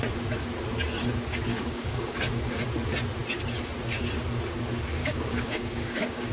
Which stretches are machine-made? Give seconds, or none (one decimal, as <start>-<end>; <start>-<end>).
1.5-2.6; 5.0-6.3